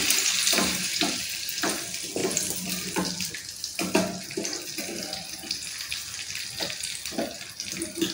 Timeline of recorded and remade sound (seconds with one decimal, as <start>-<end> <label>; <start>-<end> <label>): 0.0-0.4 recorded; 0.4-1.2 remade; 1.2-2.2 recorded; 2.2-3.3 remade; 3.3-8.1 recorded